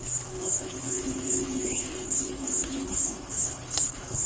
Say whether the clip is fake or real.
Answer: fake